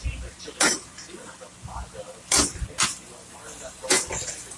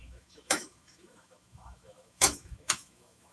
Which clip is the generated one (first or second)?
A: second